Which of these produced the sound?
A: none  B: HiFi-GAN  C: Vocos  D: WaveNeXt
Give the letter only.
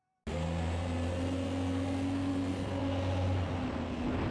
A